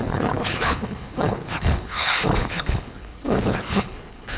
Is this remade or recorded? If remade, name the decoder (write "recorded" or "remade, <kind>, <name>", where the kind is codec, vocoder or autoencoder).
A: remade, codec, HILCodec